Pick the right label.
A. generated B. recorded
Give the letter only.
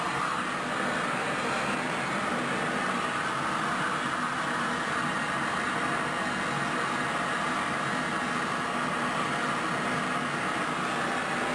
B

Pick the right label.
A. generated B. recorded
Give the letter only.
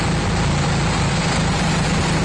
B